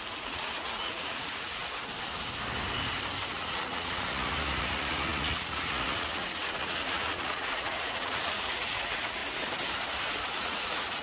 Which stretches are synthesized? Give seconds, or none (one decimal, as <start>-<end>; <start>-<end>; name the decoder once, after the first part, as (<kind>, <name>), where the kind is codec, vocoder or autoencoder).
0.0-1.6 (vocoder, Vocos); 3.3-9.2; 10.4-11.0